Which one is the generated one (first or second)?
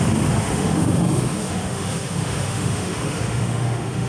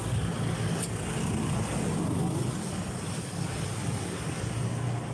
first